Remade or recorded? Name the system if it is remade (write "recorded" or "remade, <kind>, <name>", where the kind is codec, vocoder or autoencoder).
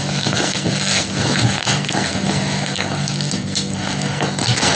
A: remade, codec, SNAC